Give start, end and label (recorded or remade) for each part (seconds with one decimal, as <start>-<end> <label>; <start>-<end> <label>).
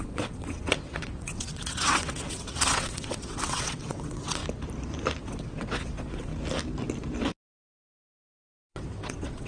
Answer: 0.0-4.4 remade; 4.4-5.2 recorded; 5.2-6.3 remade; 6.3-8.7 recorded; 8.7-9.5 remade